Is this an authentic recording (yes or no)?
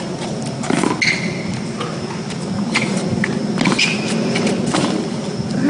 yes